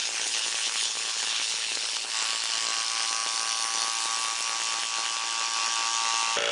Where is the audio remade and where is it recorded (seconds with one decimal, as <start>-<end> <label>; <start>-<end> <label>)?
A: 0.0-2.1 remade; 2.1-6.5 recorded